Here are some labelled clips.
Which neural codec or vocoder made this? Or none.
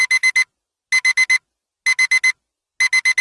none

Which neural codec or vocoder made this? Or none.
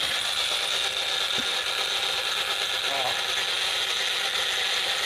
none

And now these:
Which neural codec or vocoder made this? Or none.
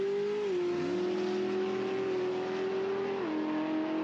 none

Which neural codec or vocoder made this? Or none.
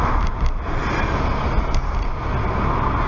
none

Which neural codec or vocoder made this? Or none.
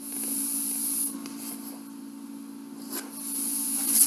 none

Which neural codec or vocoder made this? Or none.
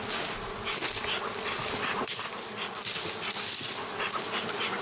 none